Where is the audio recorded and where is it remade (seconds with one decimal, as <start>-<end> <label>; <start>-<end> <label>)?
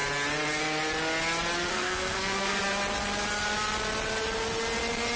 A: 0.0-1.7 recorded; 1.7-2.6 remade; 2.6-5.2 recorded